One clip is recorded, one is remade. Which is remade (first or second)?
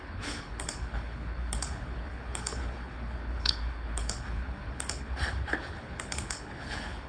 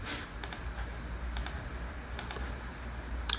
first